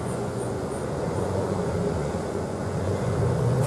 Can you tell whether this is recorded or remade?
remade